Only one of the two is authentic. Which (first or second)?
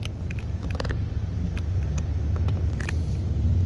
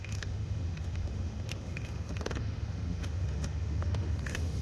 first